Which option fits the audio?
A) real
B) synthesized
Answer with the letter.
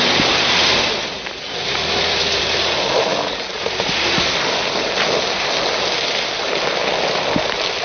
A